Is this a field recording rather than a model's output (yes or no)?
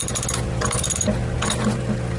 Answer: yes